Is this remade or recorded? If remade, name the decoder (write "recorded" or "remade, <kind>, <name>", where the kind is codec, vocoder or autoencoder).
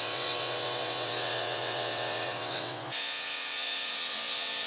remade, vocoder, WaveNeXt